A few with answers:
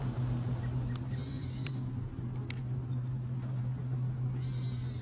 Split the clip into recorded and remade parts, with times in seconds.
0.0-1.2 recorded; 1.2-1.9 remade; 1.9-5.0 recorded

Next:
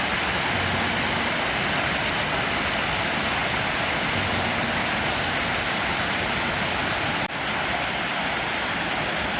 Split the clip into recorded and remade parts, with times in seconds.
0.0-3.4 recorded; 3.4-8.3 remade; 8.3-9.4 recorded

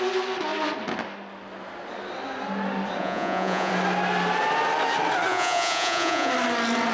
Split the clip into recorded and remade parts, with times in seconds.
0.0-3.0 recorded; 3.0-3.7 remade; 3.7-5.3 recorded; 5.3-6.3 remade; 6.3-6.9 recorded

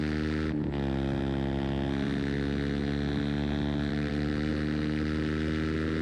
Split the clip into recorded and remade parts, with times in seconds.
0.0-3.9 recorded; 3.9-4.5 remade; 4.5-6.0 recorded

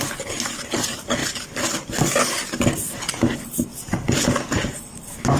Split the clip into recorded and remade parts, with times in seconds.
0.0-1.2 remade; 1.2-3.1 recorded; 3.1-3.7 remade; 3.7-4.8 recorded; 4.8-5.4 remade

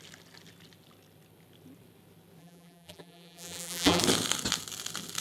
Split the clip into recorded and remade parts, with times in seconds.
0.0-2.4 recorded; 2.4-4.0 remade; 4.0-5.2 recorded

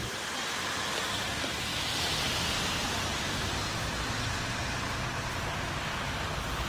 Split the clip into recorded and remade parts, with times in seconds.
0.0-6.7 recorded